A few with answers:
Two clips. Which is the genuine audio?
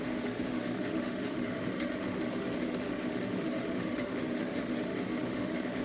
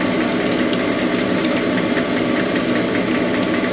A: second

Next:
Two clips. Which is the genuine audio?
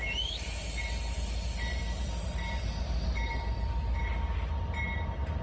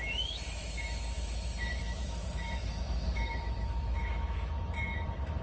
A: first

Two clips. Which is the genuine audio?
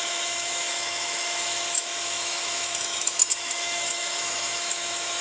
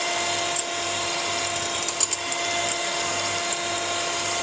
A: second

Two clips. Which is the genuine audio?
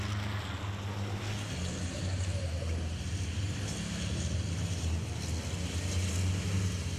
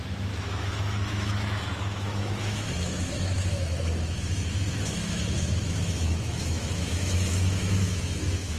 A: first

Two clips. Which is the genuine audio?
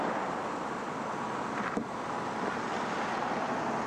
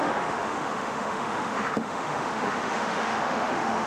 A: first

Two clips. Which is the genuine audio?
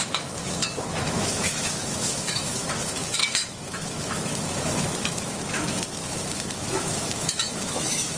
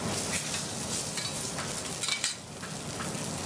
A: second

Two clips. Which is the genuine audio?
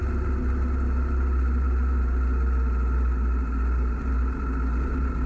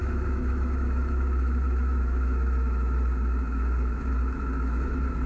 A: first